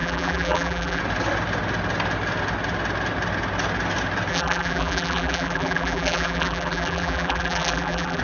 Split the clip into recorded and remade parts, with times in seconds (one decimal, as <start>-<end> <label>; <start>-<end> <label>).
0.0-1.0 remade; 1.0-4.3 recorded; 4.3-8.2 remade